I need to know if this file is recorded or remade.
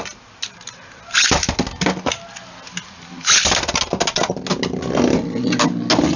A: recorded